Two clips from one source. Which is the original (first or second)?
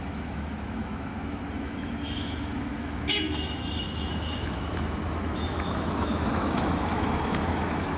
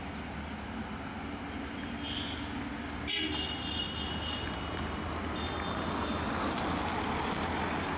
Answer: second